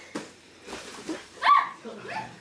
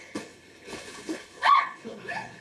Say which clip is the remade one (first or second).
second